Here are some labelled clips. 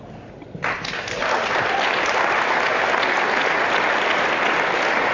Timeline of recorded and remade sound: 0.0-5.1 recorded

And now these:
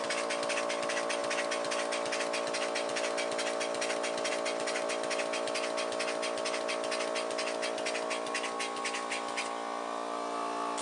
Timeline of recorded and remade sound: 0.0-10.8 recorded

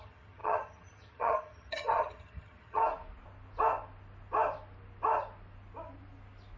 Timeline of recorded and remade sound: 0.0-2.8 remade; 2.8-6.6 recorded

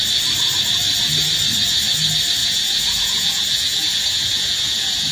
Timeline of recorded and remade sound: 0.0-2.4 recorded; 2.4-5.1 remade

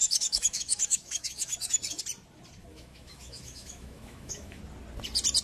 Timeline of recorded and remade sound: 0.0-2.0 remade; 2.0-2.7 recorded; 2.7-4.6 remade; 4.6-5.4 recorded

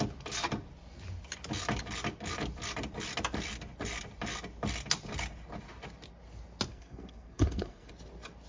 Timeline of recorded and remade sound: 0.0-6.7 recorded; 6.7-7.9 remade; 7.9-8.5 recorded